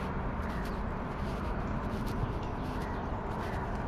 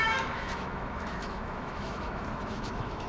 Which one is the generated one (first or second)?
second